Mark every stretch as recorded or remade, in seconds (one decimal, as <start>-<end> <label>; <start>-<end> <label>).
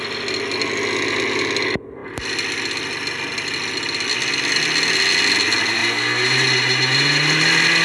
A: 0.0-7.8 recorded